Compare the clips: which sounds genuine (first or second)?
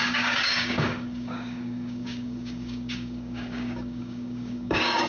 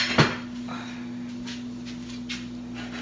second